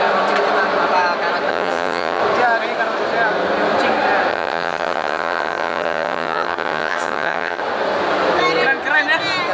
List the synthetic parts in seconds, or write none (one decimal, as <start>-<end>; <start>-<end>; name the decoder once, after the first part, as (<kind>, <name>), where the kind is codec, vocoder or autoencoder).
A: 1.5-2.2 (vocoder, HiFi-GAN); 4.3-7.6